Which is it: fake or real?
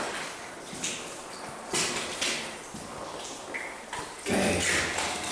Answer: real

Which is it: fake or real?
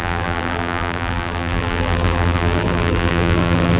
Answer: fake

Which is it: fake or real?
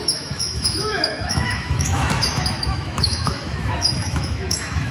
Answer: fake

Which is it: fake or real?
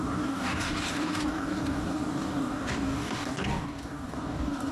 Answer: fake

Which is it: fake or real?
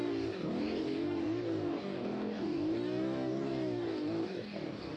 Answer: fake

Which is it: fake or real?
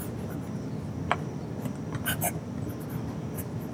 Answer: real